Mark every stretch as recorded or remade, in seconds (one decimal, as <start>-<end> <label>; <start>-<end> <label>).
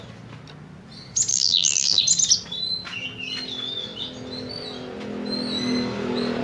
0.0-1.3 recorded; 1.3-2.0 remade; 2.0-6.4 recorded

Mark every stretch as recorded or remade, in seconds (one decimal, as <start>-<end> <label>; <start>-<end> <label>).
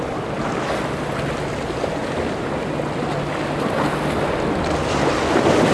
0.0-5.7 recorded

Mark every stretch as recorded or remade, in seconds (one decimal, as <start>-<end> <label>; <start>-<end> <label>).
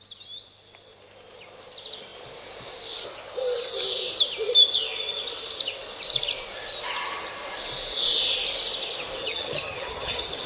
0.0-9.2 recorded; 9.2-10.5 remade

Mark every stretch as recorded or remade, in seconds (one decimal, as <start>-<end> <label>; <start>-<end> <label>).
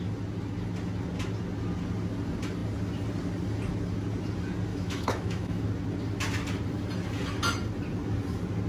0.0-4.7 recorded; 4.7-5.6 remade; 5.6-8.7 recorded